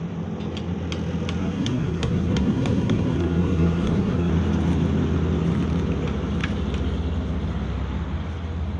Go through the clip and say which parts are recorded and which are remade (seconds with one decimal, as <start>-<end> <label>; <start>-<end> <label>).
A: 0.0-1.4 recorded; 1.4-4.3 remade; 4.3-8.8 recorded